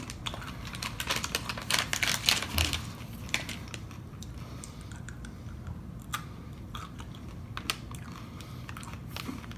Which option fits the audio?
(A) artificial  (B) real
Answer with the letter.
A